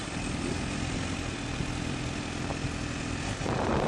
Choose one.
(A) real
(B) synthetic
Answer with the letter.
A